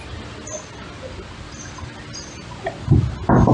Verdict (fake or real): real